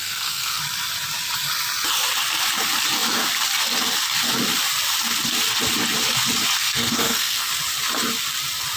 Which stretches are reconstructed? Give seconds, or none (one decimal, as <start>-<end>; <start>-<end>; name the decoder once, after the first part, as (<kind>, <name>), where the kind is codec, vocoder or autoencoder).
0.0-0.6 (codec, SNAC); 6.6-7.5